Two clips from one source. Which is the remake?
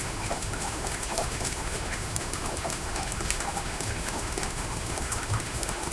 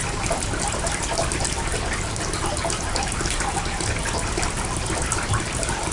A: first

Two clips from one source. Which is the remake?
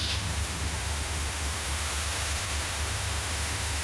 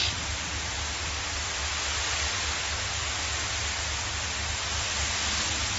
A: first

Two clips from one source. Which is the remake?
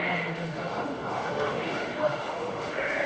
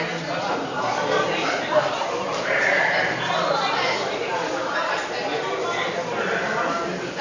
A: first